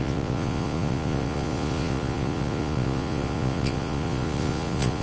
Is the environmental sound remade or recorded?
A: remade